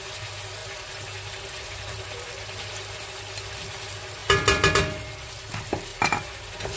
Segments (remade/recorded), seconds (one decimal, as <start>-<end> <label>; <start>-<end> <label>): 0.0-6.8 recorded